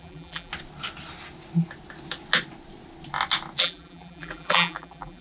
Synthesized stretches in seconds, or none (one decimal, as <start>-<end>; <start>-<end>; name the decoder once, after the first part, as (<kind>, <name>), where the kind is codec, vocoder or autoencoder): 0.0-0.5 (vocoder, BigVGAN v2); 3.6-5.2